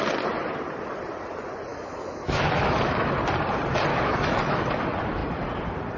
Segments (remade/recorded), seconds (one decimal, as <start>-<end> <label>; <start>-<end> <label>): 0.0-1.7 recorded; 1.7-3.1 remade; 3.1-3.9 recorded; 3.9-4.7 remade; 4.7-6.0 recorded